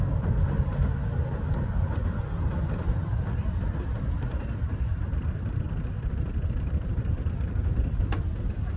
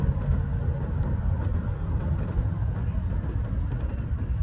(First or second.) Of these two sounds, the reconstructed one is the first